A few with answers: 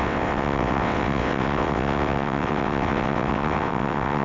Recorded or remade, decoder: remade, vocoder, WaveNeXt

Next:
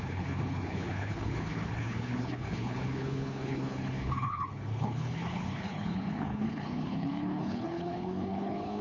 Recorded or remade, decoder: remade, codec, HILCodec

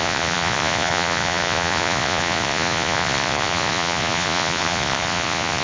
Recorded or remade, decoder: remade, vocoder, Vocos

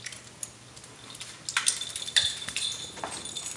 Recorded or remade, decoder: recorded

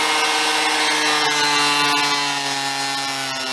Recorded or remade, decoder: recorded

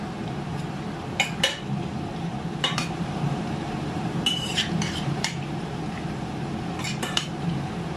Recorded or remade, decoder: remade, vocoder, BigVGAN v2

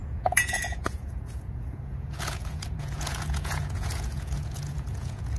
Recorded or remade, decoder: remade, vocoder, Vocos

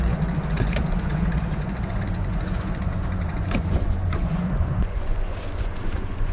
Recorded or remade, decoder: remade, vocoder, Vocos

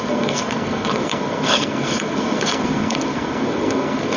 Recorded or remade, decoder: remade, codec, SNAC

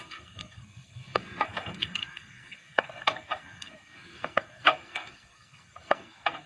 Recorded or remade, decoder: remade, codec, SNAC